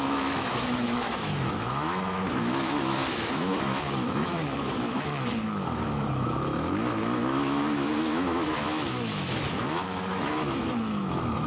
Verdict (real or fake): fake